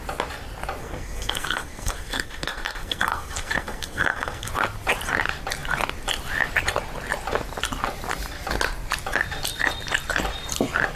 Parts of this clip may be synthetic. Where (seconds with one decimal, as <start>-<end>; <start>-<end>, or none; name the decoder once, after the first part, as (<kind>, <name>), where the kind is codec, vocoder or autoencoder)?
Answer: 0.8-4.5 (codec, SNAC)